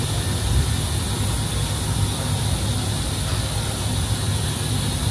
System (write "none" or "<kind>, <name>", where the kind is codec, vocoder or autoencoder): none